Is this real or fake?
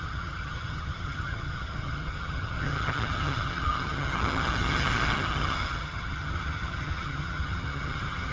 fake